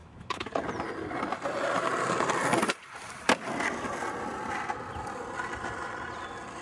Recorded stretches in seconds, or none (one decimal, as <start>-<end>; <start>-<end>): 0.5-6.6